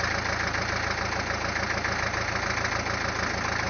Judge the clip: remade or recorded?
recorded